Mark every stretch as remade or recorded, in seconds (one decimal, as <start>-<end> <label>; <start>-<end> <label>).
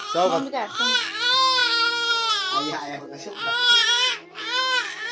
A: 0.0-5.1 recorded